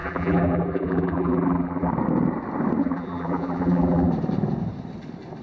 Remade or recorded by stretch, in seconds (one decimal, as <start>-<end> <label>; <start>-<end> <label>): 0.0-1.9 remade; 1.9-2.8 recorded; 2.8-4.1 remade; 4.1-5.4 recorded